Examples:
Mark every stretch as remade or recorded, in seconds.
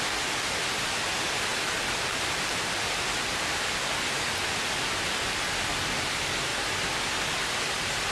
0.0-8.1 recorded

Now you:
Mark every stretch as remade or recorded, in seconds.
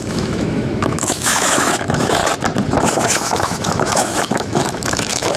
0.0-2.2 remade; 2.2-2.8 recorded; 2.8-5.4 remade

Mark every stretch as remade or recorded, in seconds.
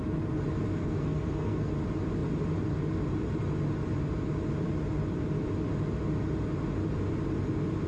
0.0-0.8 recorded; 0.8-1.7 remade; 1.7-7.9 recorded